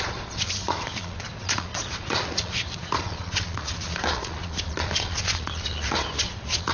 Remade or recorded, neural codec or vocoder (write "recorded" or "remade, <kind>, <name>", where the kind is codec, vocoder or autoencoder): remade, vocoder, Vocos